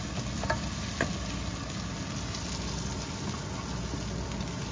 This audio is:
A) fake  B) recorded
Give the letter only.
B